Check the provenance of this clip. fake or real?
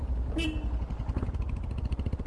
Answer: real